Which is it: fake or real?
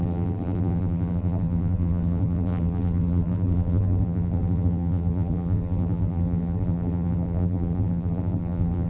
fake